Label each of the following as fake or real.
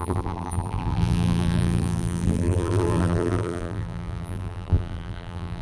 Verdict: fake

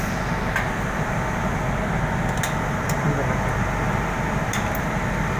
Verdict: real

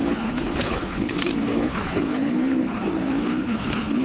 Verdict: fake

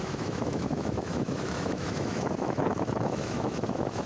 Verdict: fake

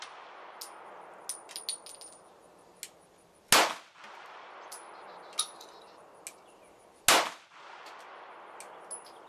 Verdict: real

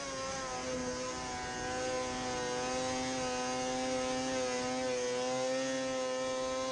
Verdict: real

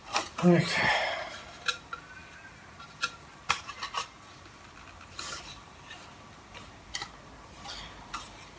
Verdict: fake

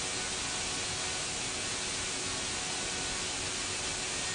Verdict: real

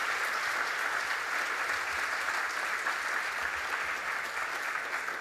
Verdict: real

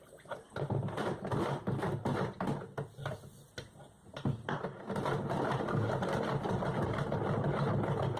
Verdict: fake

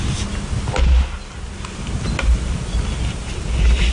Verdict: real